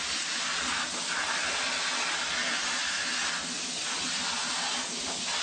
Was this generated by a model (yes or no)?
no